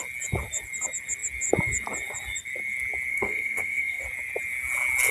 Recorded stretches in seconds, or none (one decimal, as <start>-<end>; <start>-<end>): 0.0-3.1; 4.0-5.1

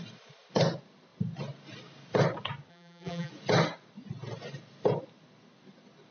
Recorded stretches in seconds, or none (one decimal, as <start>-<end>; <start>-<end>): 0.0-2.7; 3.3-6.1

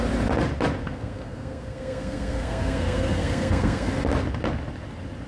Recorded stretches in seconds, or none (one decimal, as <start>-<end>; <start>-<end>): 0.0-0.8; 3.9-5.3

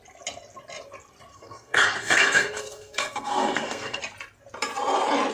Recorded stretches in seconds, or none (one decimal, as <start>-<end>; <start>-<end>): 0.0-1.3; 4.0-5.3

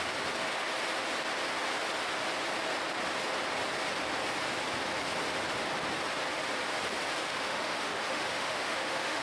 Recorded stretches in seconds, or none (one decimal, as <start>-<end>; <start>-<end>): 0.0-7.2